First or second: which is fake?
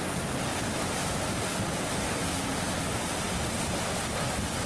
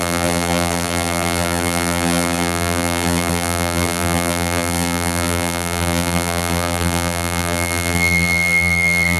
second